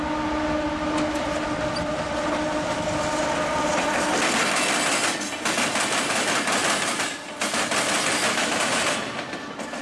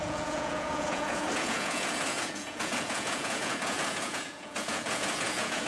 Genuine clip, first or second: first